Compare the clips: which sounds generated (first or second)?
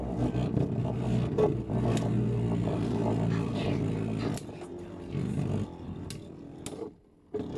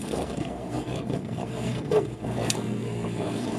second